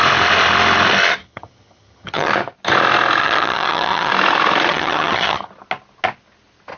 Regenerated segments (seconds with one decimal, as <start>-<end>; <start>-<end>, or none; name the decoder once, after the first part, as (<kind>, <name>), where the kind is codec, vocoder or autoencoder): 1.2-2.3 (vocoder, HiFi-GAN); 3.2-4.1; 4.7-5.5